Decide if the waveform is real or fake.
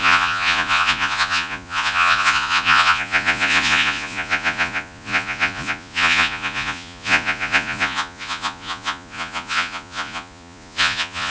fake